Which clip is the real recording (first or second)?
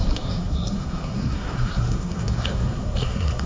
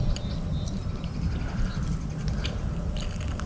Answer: second